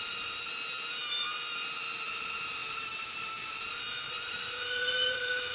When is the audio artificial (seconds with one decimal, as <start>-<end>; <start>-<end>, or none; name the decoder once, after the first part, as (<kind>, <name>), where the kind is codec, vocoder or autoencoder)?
0.0-0.5 (vocoder, BigVGAN v2); 2.1-5.5